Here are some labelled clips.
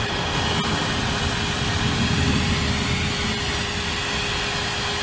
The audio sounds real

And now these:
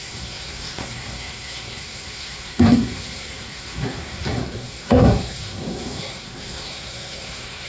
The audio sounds fake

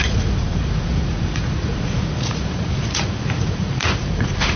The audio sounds fake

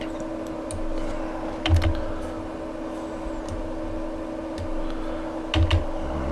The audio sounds real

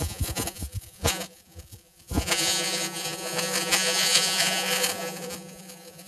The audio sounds fake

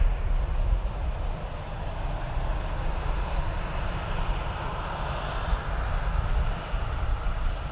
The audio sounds real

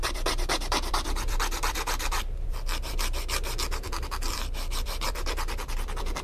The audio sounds fake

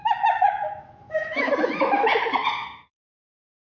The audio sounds fake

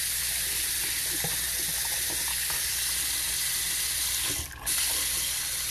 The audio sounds real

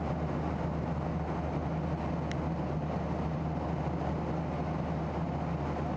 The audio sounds real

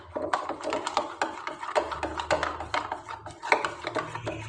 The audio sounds real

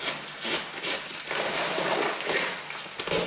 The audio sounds real